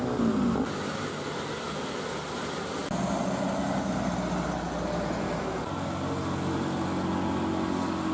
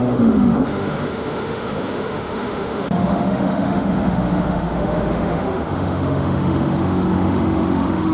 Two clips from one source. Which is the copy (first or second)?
second